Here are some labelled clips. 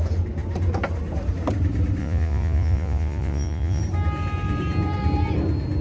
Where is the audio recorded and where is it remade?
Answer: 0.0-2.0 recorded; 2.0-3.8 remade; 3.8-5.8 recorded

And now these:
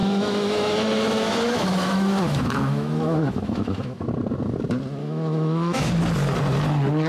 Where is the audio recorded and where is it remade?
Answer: 0.0-4.0 remade; 4.0-5.0 recorded; 5.0-5.9 remade; 5.9-7.1 recorded

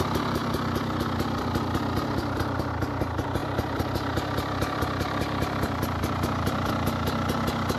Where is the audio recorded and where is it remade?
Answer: 0.0-3.4 recorded; 3.4-6.7 remade; 6.7-7.8 recorded

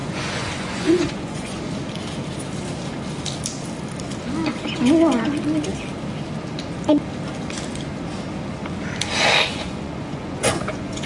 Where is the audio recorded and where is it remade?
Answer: 0.0-1.6 remade; 1.6-9.5 recorded; 9.5-11.1 remade

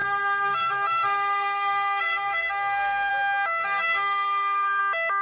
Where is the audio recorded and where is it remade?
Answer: 0.0-3.1 remade; 3.1-3.6 recorded; 3.6-4.8 remade; 4.8-5.2 recorded

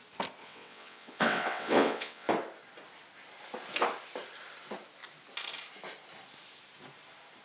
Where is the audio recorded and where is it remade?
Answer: 0.0-0.4 recorded; 0.4-2.3 remade; 2.3-7.4 recorded

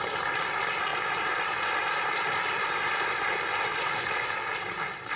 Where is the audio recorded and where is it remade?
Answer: 0.0-5.2 recorded

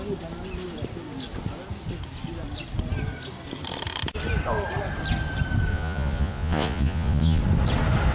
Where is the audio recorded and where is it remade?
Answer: 0.0-5.7 recorded; 5.7-7.4 remade; 7.4-8.1 recorded